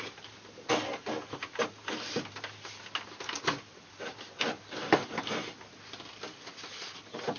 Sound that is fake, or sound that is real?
real